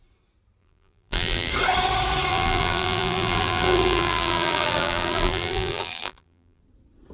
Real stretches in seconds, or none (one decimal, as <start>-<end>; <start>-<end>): 0.0-0.6; 1.5-2.3; 6.6-7.1